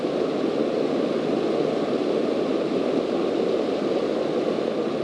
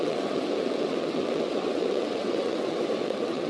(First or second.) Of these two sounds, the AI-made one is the second